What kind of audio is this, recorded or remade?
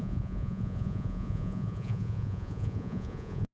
remade